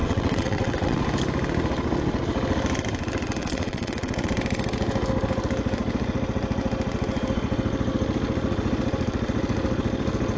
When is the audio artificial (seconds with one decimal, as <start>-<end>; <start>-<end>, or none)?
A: 0.0-1.0; 3.4-4.3